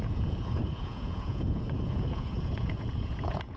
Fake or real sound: fake